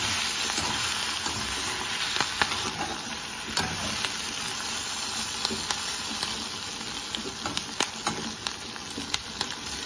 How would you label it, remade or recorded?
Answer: recorded